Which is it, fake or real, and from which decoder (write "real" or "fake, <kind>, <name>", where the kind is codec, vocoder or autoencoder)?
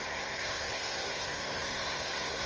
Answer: fake, codec, SNAC